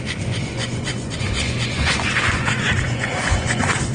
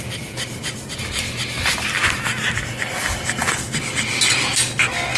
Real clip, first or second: second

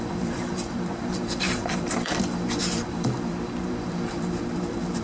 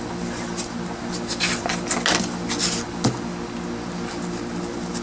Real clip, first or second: second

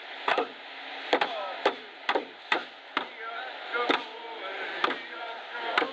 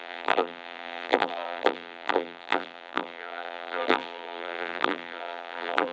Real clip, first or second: first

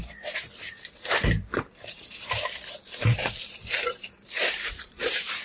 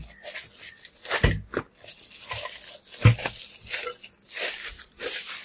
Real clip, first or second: second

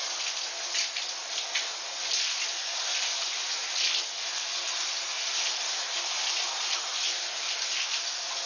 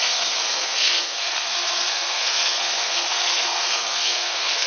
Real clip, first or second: first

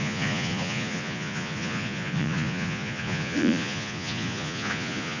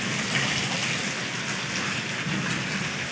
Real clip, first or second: second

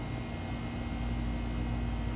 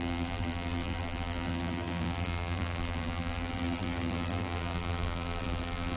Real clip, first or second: first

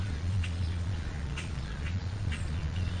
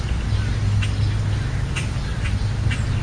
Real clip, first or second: second